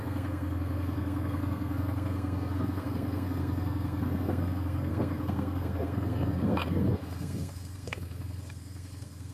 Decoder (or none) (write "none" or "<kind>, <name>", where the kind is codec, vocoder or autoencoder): codec, SNAC